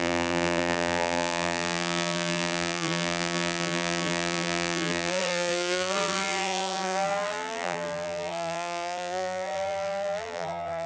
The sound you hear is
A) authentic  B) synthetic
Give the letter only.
B